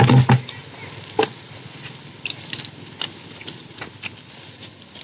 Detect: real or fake real